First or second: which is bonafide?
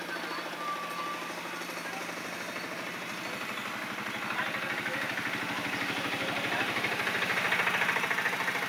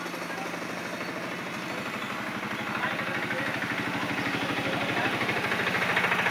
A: second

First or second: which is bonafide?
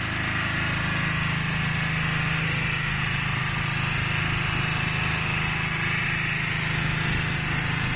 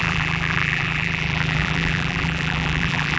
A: first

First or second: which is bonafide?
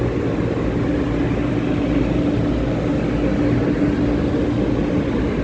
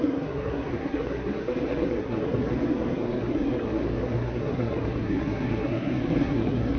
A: first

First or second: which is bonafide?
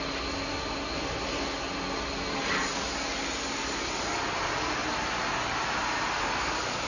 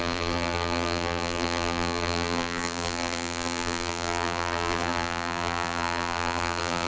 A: first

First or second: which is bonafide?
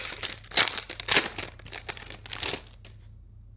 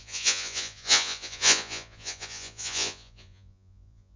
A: first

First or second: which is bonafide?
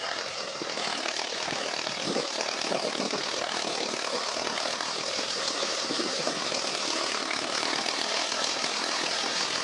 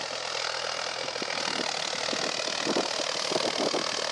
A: second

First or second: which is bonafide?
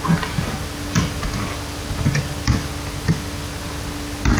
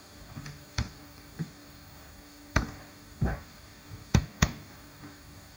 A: first